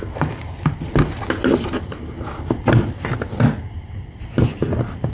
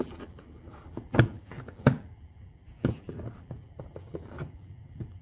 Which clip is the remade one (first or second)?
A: second